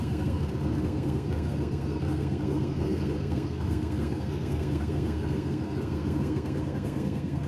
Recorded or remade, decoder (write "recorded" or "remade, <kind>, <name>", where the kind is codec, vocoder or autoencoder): remade, codec, SNAC